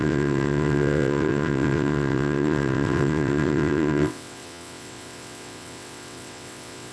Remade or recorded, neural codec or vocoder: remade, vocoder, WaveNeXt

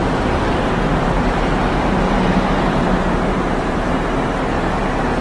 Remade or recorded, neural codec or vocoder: remade, vocoder, BigVGAN v2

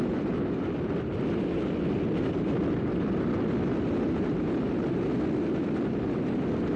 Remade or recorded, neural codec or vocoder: recorded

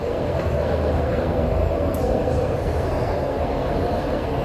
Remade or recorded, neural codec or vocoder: remade, codec, SNAC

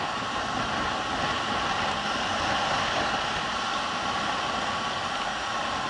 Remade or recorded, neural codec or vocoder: recorded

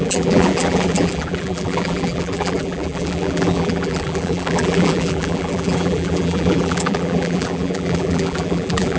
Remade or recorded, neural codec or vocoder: remade, vocoder, BigVGAN v2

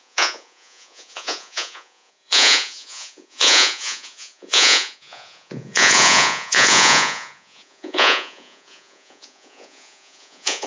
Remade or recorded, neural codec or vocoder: remade, vocoder, Vocos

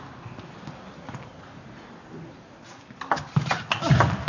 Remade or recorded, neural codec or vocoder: recorded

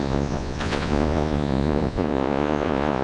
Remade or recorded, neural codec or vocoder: remade, vocoder, Vocos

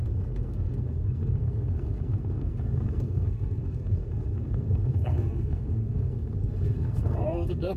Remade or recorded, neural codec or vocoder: remade, codec, SNAC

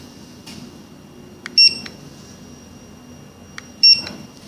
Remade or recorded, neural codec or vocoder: recorded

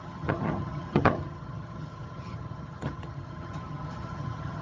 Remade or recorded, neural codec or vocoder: remade, vocoder, HiFi-GAN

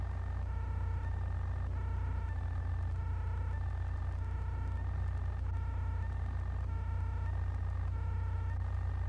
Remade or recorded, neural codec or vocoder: recorded